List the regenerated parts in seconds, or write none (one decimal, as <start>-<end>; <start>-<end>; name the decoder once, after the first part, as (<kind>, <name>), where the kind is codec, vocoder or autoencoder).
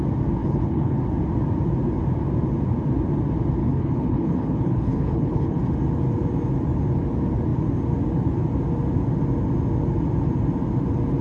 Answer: 0.4-1.0 (codec, HILCodec); 3.6-5.6